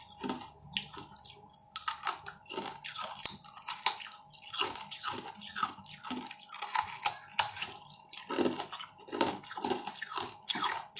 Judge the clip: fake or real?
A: real